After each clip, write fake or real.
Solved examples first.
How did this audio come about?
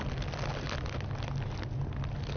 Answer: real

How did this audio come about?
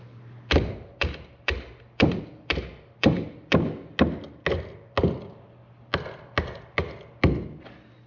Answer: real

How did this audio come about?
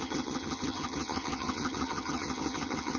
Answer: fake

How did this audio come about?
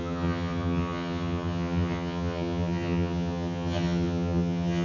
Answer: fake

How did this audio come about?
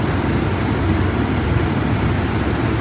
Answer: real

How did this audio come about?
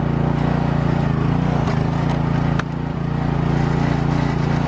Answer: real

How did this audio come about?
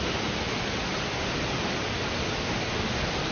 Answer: real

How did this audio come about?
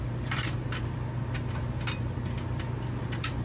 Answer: real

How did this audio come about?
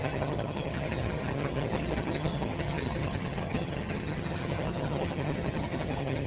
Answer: fake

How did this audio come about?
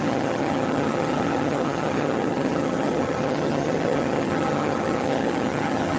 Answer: fake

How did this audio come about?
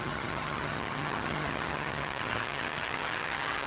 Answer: fake